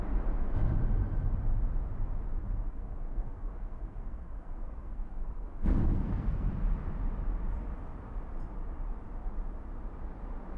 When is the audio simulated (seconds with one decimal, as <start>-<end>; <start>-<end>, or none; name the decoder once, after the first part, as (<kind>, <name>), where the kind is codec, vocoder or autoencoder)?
2.4-6.5 (codec, SNAC)